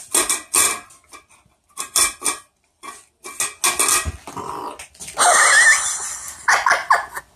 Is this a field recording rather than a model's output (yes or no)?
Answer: yes